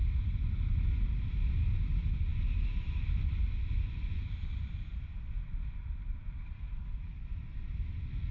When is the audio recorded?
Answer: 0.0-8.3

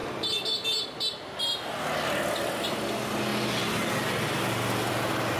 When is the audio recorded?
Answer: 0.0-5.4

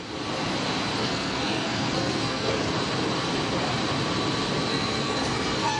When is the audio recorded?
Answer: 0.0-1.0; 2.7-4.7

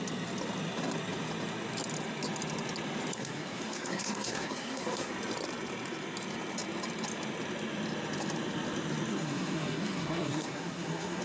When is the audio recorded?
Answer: 0.0-3.1; 5.1-9.1